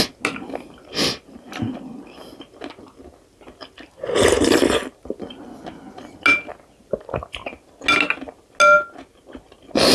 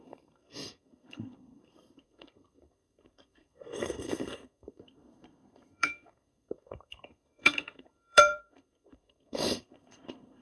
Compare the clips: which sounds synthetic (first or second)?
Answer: second